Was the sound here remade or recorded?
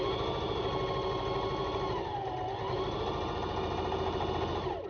recorded